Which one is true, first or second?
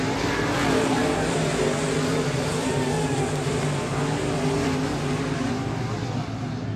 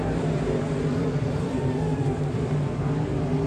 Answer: first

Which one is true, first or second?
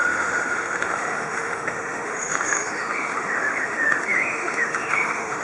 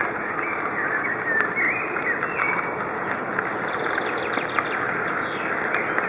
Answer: second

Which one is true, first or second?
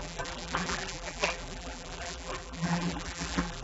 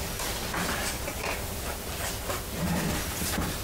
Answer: second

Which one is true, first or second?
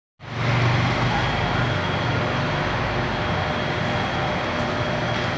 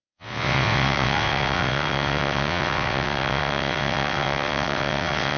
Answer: first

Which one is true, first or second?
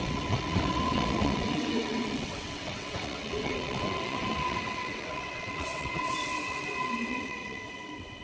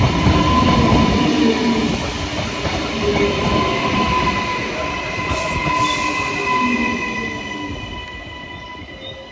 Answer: second